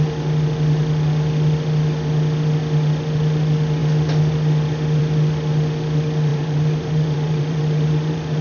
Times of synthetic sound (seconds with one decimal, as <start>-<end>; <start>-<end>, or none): 6.3-8.4